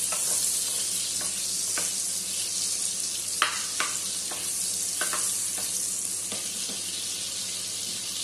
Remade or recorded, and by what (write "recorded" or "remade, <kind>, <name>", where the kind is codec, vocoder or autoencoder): recorded